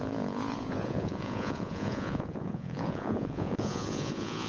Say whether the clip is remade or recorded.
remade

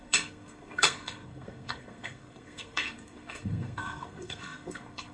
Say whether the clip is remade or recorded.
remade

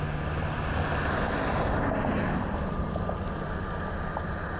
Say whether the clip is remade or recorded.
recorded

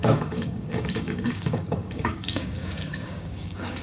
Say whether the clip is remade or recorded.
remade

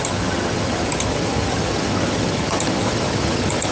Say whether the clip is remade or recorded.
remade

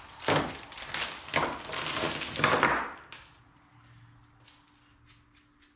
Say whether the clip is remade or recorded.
recorded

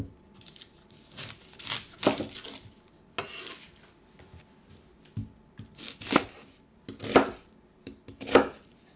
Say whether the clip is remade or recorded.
recorded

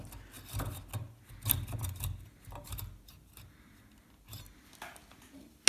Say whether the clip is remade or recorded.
recorded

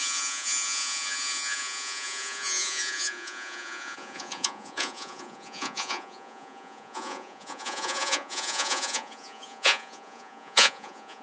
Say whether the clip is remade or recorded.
remade